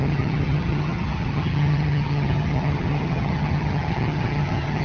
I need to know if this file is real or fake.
fake